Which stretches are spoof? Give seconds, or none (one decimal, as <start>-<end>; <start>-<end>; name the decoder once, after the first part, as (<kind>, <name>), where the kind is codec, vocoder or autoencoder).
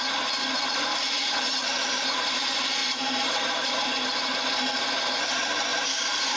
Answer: 0.9-2.4 (vocoder, BigVGAN v2); 2.8-5.2; 5.7-6.4